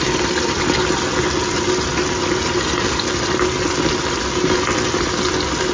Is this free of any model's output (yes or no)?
yes